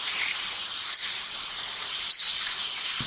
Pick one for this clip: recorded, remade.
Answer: recorded